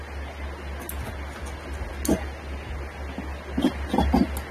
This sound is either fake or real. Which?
real